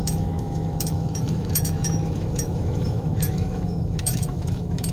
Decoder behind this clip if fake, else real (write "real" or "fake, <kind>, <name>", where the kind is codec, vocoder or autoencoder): fake, autoencoder, DAC-VAE